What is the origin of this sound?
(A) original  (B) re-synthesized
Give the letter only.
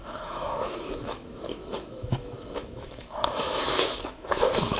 B